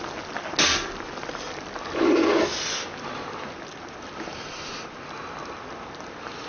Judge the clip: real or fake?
real